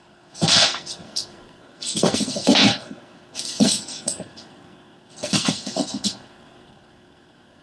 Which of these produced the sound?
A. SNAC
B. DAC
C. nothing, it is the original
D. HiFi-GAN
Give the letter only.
A